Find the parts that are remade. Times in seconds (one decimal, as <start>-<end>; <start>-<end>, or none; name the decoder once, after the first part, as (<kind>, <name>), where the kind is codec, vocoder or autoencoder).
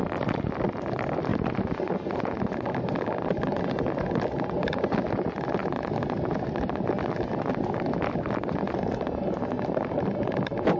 1.3-2.8 (vocoder, BigVGAN v2)